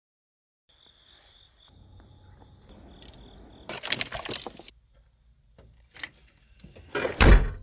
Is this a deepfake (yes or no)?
no